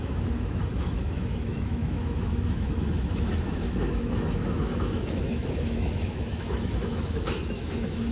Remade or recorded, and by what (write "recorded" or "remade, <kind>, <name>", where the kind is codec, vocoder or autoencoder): remade, autoencoder, DAC-VAE